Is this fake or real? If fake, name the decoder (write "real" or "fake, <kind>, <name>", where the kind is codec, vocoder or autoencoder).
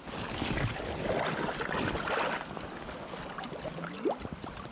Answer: real